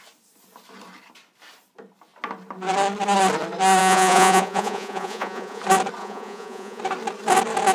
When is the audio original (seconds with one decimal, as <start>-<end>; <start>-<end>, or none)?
0.0-3.8; 5.6-6.0; 6.8-7.7